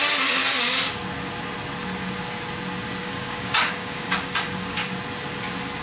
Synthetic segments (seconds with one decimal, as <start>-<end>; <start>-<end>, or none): 0.0-0.4; 3.0-4.8